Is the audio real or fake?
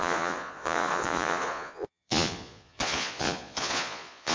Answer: fake